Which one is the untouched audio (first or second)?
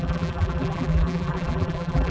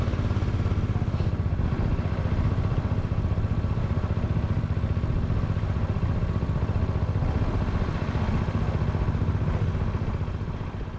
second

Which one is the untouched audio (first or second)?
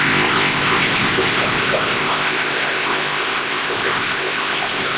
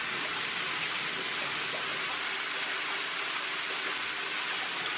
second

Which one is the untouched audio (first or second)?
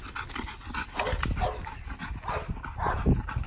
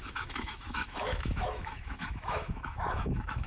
first